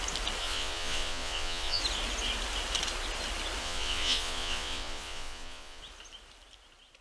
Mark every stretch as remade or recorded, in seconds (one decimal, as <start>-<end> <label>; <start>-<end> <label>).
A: 0.0-0.4 recorded; 0.4-1.8 remade; 1.8-3.6 recorded; 3.6-5.8 remade; 5.8-7.0 recorded